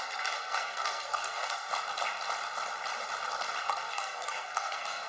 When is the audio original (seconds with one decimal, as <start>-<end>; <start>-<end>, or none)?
1.7-3.6